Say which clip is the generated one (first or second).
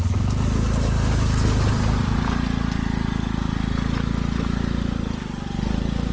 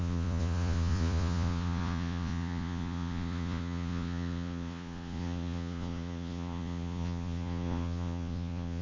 second